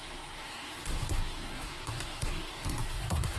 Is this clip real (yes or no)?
no